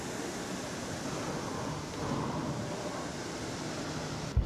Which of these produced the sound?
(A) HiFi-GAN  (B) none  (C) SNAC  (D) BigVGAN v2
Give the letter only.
B